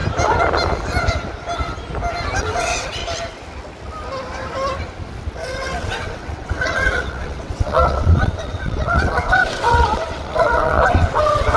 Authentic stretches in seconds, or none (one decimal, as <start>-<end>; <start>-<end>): 0.0-2.4; 3.0-5.3